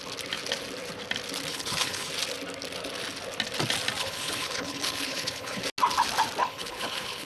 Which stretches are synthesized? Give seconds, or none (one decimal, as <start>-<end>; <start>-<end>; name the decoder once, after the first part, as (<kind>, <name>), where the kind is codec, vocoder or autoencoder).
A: 1.5-2.1 (codec, HILCodec); 4.0-5.6; 6.4-7.3